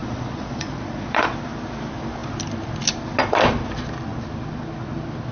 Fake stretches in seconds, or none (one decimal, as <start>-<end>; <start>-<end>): 0.0-1.3